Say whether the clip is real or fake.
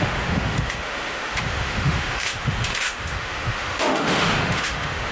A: fake